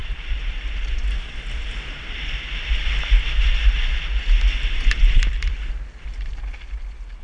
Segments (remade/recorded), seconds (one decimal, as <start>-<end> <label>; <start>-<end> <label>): 0.0-0.9 remade; 0.9-5.0 recorded; 5.0-6.4 remade; 6.4-7.2 recorded